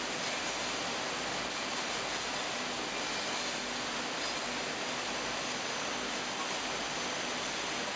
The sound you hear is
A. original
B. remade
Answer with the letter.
A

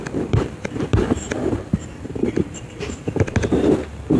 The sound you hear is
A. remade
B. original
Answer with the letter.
A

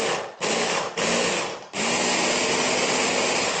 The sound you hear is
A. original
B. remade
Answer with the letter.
A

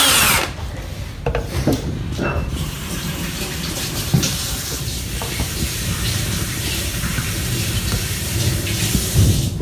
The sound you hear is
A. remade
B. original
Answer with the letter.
A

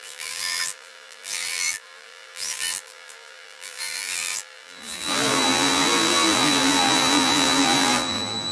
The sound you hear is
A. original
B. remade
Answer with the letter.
B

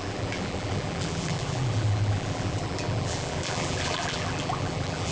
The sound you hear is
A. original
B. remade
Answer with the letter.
B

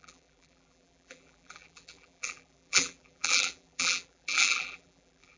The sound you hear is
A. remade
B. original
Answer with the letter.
A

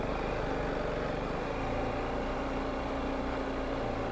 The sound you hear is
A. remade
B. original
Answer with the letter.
B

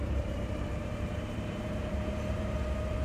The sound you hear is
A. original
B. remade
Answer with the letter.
B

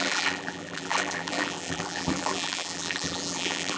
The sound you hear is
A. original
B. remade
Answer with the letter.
B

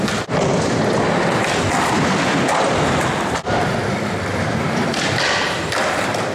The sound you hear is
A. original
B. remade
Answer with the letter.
B